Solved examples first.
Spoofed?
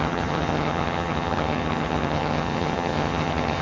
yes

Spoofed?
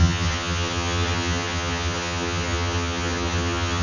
yes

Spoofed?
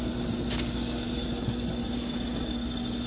no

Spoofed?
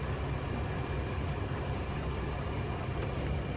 no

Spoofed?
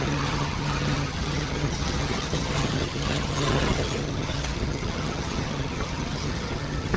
yes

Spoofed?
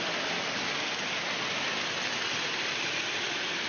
no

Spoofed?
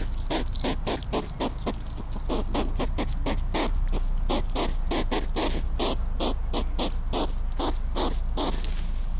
no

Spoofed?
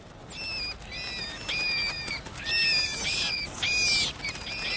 no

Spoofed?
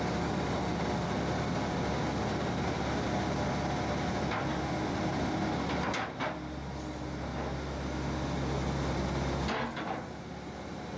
no